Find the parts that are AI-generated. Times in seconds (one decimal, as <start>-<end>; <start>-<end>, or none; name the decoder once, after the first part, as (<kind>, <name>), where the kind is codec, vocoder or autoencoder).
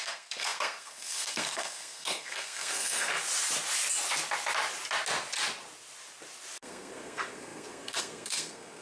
0.0-3.1 (codec, SNAC); 6.6-8.8